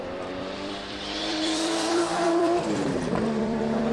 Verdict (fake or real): fake